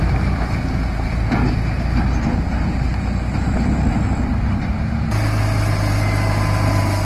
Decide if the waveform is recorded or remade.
recorded